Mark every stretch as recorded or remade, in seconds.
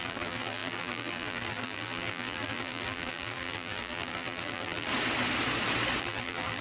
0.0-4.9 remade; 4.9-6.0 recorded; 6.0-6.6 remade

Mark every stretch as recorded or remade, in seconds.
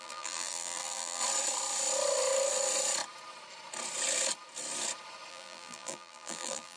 0.0-1.2 remade; 1.2-5.3 recorded; 5.3-6.8 remade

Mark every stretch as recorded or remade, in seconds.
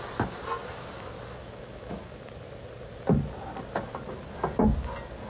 0.0-1.4 recorded; 1.4-2.2 remade; 2.2-5.3 recorded